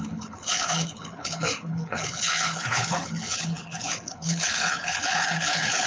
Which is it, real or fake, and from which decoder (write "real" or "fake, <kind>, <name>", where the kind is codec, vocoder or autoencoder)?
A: fake, codec, HILCodec